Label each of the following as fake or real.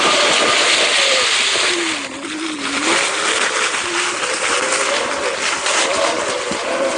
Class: real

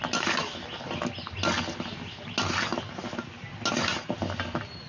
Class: real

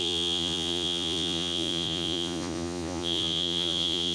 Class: fake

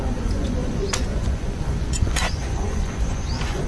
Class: fake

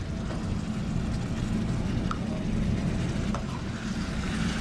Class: real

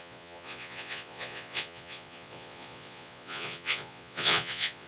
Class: fake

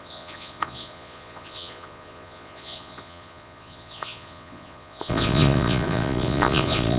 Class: fake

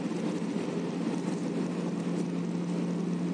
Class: real